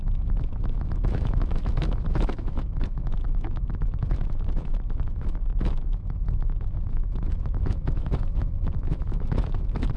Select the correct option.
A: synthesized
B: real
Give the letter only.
A